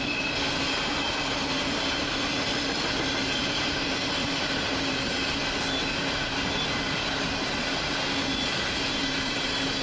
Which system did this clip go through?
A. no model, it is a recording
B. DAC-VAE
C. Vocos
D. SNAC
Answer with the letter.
A